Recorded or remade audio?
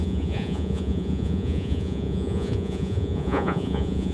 remade